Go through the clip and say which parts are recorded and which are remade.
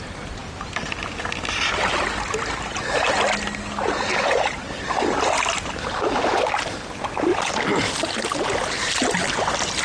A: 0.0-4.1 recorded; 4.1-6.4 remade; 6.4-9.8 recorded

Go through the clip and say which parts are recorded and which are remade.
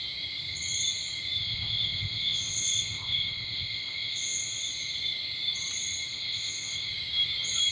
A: 0.0-1.4 recorded; 1.4-4.7 remade; 4.7-6.1 recorded; 6.1-6.9 remade; 6.9-7.7 recorded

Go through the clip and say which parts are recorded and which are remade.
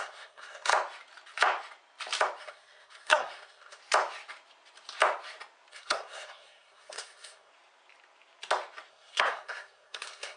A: 0.0-0.7 remade; 0.7-2.4 recorded; 2.4-3.8 remade; 3.8-5.7 recorded; 5.7-7.5 remade; 7.5-8.9 recorded; 8.9-10.4 remade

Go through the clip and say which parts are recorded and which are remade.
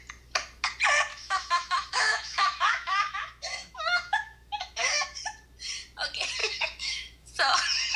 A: 0.0-1.1 recorded; 1.1-5.2 remade; 5.2-6.4 recorded; 6.4-7.3 remade; 7.3-8.0 recorded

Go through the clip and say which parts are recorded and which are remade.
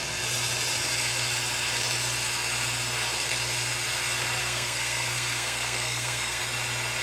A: 0.0-4.4 recorded; 4.4-6.4 remade; 6.4-7.0 recorded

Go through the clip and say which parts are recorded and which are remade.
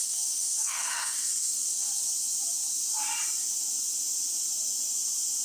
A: 0.0-1.9 remade; 1.9-5.4 recorded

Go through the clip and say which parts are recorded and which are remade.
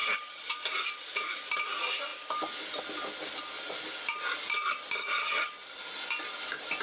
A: 0.0-0.5 remade; 0.5-5.0 recorded; 5.0-5.5 remade; 5.5-6.8 recorded